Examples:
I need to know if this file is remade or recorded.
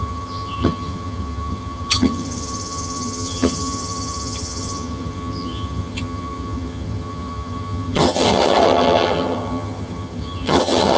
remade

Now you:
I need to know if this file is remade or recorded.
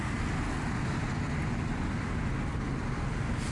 recorded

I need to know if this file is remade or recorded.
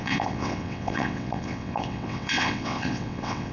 remade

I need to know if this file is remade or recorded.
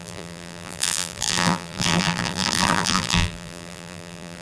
remade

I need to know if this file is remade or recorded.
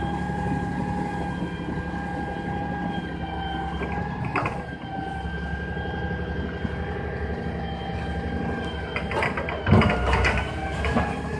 recorded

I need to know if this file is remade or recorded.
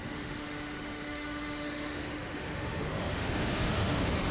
remade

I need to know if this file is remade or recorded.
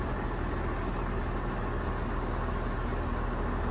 recorded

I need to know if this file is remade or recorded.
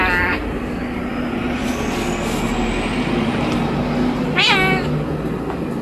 recorded